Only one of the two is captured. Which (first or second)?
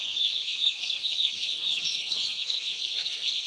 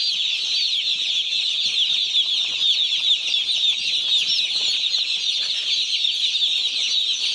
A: second